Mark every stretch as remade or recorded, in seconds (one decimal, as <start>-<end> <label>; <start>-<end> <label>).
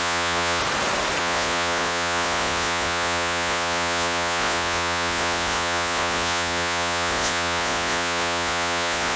0.0-0.6 remade; 0.6-1.2 recorded; 1.2-9.2 remade